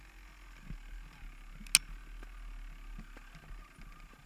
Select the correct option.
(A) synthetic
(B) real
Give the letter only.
B